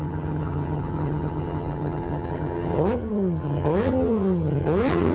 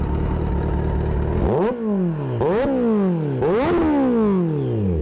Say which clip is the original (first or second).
second